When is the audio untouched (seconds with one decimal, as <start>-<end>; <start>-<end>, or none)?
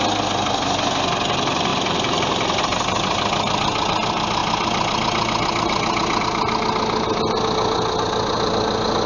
0.0-9.1